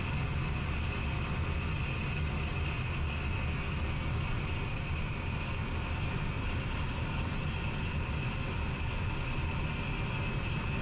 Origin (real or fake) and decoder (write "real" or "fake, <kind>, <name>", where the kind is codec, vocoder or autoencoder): real